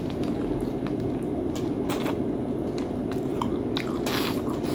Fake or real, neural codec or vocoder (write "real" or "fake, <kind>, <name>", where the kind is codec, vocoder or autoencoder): real